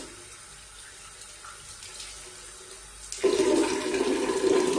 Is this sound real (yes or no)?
yes